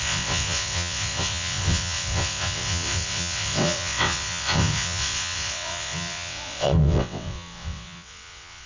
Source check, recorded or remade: remade